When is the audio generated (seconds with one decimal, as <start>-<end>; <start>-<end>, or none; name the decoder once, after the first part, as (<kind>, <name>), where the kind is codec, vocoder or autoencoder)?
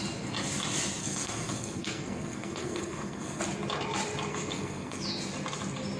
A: 1.0-3.4 (codec, SNAC); 4.3-5.0